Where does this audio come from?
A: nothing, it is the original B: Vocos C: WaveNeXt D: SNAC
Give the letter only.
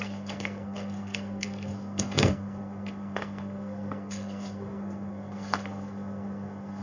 D